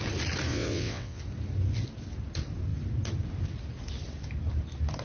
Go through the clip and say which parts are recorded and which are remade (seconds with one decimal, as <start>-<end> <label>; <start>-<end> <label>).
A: 0.0-0.5 recorded; 0.5-1.2 remade; 1.2-5.0 recorded